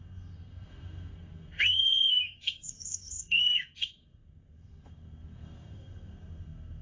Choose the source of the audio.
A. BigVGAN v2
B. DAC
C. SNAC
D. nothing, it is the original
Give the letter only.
C